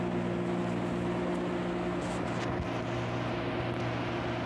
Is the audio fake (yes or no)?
no